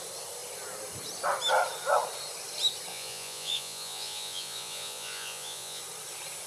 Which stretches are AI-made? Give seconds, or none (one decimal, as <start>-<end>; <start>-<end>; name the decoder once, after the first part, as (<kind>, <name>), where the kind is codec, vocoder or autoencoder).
2.9-5.8 (vocoder, Vocos)